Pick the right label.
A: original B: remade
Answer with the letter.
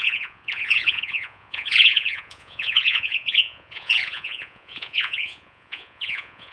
B